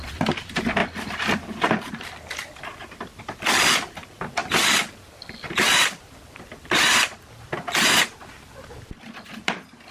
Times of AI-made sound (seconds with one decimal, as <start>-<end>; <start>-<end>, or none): none

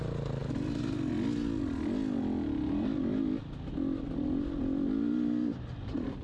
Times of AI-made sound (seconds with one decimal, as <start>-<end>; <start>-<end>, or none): none

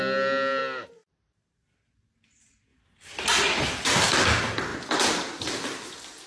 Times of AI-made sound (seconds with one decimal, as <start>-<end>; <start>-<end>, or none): none

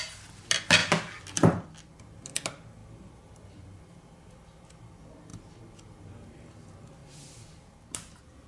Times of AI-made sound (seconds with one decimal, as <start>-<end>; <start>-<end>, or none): 2.8-4.3; 7.0-7.6

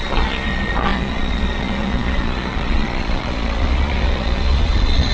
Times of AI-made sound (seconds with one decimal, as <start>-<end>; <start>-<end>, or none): 0.0-5.1

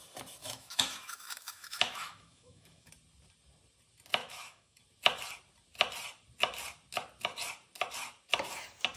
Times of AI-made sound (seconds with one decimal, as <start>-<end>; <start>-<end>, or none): 0.4-2.9; 4.2-4.8